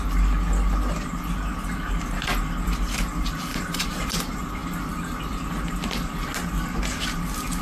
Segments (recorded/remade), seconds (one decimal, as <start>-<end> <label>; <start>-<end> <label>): 0.0-3.5 recorded; 3.5-4.1 remade; 4.1-7.6 recorded